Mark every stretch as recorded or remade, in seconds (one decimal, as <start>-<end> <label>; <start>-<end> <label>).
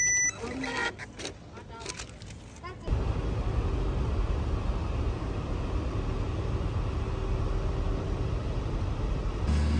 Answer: 0.0-9.8 recorded